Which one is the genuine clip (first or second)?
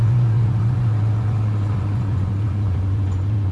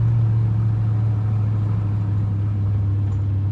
second